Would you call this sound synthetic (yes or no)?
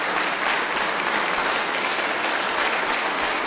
no